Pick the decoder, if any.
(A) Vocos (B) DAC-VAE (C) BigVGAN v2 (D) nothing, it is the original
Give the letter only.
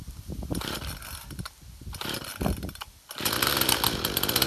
D